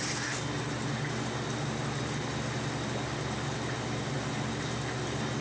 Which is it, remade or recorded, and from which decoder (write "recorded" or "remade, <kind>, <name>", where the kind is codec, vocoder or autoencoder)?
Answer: recorded